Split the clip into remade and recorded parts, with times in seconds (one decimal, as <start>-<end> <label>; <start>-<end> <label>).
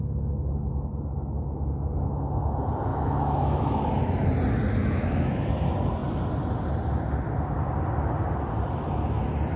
0.0-2.9 recorded; 2.9-4.3 remade; 4.3-4.8 recorded; 4.8-5.5 remade; 5.5-9.6 recorded